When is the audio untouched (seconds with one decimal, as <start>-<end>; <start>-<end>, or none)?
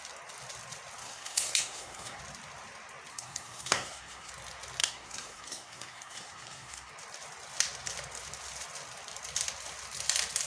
0.0-1.0; 2.2-3.1; 4.3-4.8; 6.9-10.5